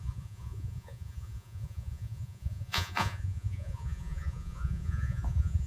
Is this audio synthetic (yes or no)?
yes